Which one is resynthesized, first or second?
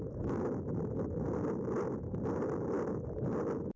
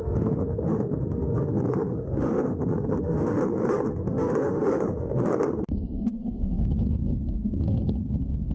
second